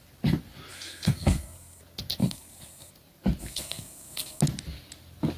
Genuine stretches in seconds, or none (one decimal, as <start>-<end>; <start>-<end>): 0.0-0.7; 1.8-2.2; 2.9-3.4; 4.4-5.4